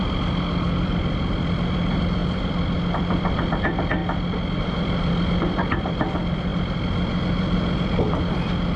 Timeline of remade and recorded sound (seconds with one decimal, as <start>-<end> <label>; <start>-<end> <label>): 0.0-4.0 remade; 4.0-4.6 recorded; 4.6-8.8 remade